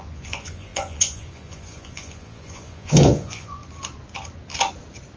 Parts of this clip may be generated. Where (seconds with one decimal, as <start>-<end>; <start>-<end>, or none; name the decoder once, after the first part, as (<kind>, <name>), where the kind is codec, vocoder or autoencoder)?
0.0-3.6 (vocoder, Vocos)